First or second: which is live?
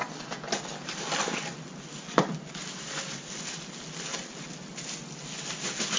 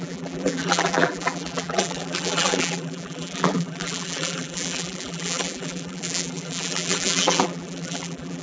first